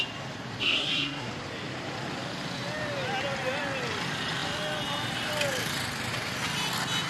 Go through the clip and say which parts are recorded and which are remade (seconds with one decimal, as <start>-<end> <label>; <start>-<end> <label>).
0.0-0.6 recorded; 0.6-1.3 remade; 1.3-7.1 recorded